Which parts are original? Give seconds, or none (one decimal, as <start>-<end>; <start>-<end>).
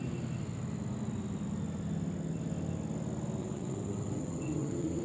0.0-3.4